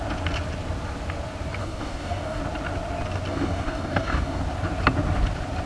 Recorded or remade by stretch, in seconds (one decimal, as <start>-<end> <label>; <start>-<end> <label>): 0.0-1.6 recorded; 1.6-2.4 remade; 2.4-3.3 recorded; 3.3-4.4 remade; 4.4-5.7 recorded